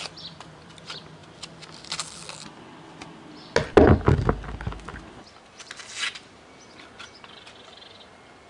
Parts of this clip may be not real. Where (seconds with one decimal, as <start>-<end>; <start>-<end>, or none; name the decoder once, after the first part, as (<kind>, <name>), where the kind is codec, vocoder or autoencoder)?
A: none